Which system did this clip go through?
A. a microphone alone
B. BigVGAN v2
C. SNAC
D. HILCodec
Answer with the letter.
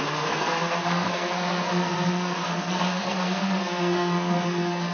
C